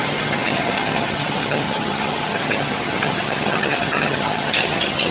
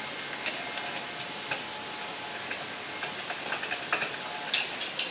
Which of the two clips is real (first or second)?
second